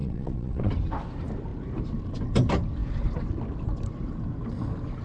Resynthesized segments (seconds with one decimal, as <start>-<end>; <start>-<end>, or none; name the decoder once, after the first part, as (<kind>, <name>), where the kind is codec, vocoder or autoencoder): 0.0-0.7 (vocoder, WaveNeXt)